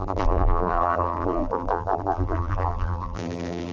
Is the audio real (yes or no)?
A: no